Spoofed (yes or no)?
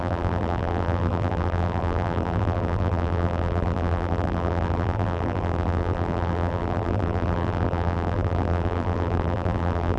yes